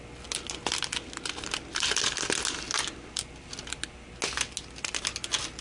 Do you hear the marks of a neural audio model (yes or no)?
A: no